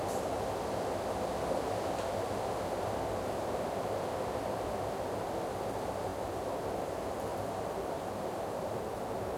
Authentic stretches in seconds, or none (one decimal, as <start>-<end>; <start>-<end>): 0.0-7.3